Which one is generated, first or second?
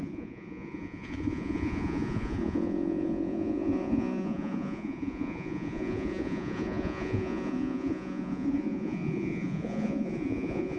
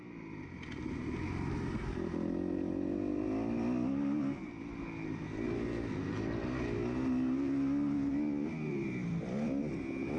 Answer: first